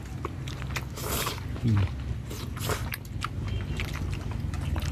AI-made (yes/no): no